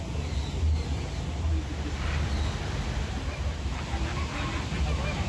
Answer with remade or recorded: recorded